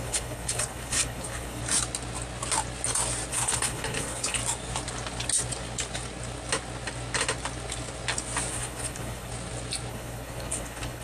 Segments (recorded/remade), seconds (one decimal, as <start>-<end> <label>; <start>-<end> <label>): 0.0-1.6 remade; 1.6-3.3 recorded; 3.3-4.4 remade; 4.4-8.5 recorded; 8.5-9.3 remade; 9.3-9.9 recorded; 9.9-11.0 remade